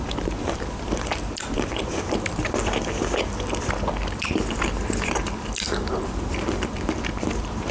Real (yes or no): no